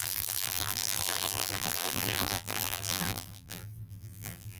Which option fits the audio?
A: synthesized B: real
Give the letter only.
A